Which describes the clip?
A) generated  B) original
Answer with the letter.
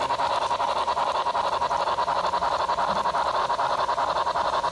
B